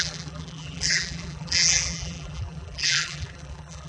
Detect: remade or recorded remade